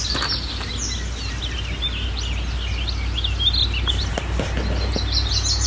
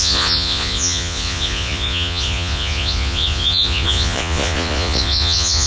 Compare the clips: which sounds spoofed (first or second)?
second